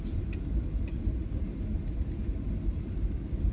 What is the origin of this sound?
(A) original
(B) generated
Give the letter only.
B